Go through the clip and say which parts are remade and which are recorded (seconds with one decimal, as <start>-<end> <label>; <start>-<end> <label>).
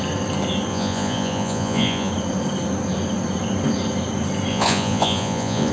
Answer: 0.0-0.7 recorded; 0.7-2.1 remade; 2.1-4.5 recorded; 4.5-5.7 remade